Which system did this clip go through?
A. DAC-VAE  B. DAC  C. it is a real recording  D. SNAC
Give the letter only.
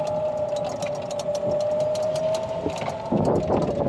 C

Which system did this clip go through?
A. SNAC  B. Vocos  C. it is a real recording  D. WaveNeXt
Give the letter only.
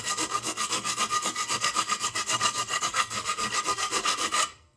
A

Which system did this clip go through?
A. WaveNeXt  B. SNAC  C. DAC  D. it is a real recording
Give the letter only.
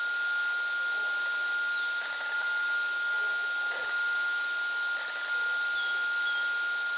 D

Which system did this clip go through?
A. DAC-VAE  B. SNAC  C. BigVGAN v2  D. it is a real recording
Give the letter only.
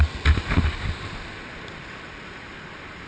D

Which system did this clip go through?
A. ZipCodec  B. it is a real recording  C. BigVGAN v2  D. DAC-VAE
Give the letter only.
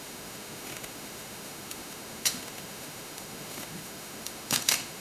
D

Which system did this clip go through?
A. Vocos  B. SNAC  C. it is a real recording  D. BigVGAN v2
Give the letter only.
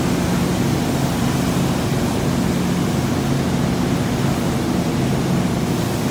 C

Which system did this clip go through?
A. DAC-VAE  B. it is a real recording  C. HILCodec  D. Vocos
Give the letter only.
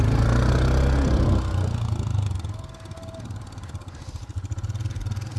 B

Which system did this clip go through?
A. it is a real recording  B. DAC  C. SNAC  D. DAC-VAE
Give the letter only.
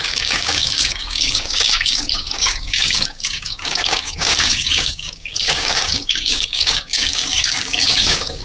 B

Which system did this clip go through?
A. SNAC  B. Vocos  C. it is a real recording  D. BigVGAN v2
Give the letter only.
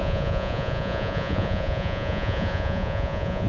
B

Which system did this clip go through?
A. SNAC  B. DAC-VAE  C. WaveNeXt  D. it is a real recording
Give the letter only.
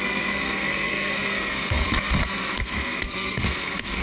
A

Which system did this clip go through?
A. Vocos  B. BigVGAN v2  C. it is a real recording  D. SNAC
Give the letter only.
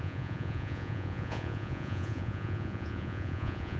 A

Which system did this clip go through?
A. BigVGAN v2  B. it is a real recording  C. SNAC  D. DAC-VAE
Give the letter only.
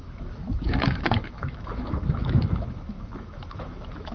D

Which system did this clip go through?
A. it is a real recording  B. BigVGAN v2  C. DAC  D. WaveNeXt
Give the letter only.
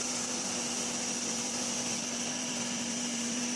B